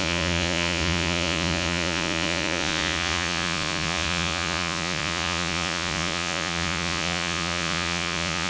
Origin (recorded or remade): remade